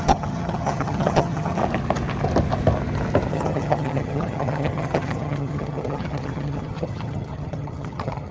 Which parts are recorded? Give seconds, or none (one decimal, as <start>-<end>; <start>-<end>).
1.6-3.3